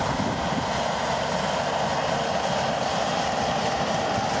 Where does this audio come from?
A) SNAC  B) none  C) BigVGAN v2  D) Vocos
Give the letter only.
B